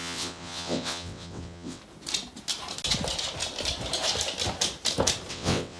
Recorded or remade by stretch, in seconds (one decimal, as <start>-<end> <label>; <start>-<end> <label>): 0.0-1.8 remade; 1.8-5.3 recorded; 5.3-5.8 remade